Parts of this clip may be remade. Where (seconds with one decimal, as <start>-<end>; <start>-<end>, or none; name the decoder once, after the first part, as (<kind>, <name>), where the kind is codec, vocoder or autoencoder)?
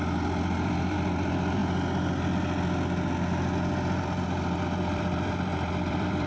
0.0-1.6 (vocoder, BigVGAN v2); 3.7-6.3